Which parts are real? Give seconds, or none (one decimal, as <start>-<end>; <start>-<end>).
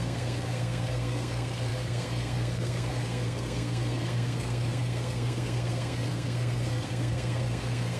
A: none